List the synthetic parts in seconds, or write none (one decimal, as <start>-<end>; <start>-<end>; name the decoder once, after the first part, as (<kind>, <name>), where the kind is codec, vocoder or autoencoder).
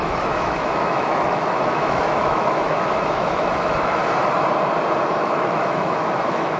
0.0-4.0 (autoencoder, DAC-VAE); 5.2-6.6